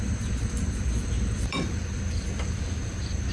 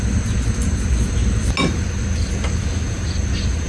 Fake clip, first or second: first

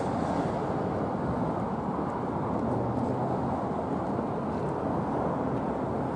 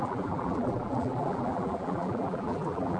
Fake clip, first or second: second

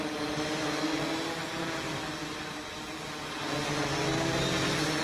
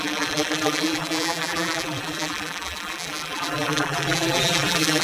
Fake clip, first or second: second